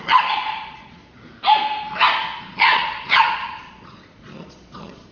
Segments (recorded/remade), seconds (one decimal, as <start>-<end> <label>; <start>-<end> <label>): 0.0-1.0 remade; 1.0-2.4 recorded; 2.4-5.1 remade